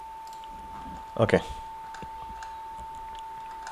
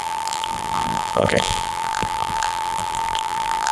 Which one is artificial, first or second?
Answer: second